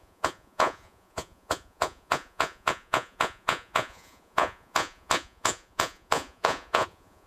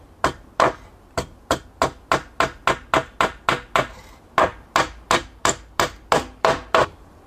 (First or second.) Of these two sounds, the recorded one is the second